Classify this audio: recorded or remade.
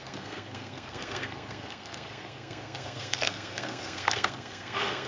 remade